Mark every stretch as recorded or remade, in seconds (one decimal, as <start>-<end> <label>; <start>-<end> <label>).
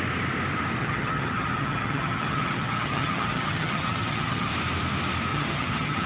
0.0-0.8 recorded; 0.8-4.5 remade; 4.5-5.3 recorded; 5.3-6.1 remade